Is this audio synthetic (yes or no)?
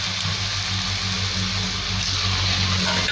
no